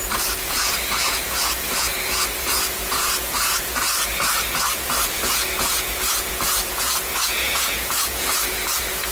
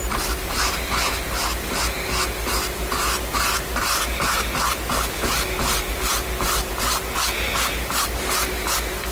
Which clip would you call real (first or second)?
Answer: second